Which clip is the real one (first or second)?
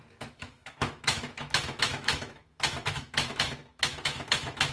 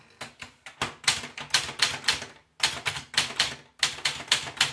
second